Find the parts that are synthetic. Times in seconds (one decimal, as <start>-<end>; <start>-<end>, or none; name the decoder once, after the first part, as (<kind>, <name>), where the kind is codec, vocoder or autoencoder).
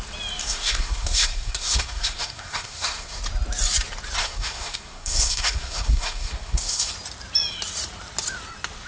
0.4-3.2 (codec, SNAC); 4.2-6.9